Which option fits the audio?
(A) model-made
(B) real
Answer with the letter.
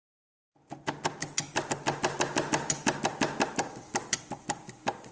B